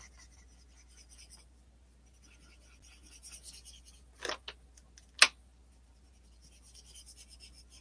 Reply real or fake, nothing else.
real